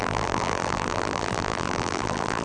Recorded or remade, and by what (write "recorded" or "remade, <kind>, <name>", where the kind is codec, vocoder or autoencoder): remade, vocoder, BigVGAN v2